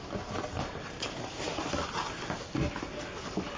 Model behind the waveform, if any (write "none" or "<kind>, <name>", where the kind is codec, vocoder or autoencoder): none